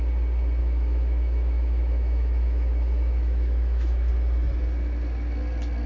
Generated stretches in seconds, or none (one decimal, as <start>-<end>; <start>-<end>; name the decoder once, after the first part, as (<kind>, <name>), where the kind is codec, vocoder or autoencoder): 0.6-4.1 (autoencoder, DAC-VAE)